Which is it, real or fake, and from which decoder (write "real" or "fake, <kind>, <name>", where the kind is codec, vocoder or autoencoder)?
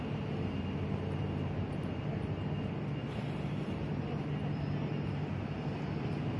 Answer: real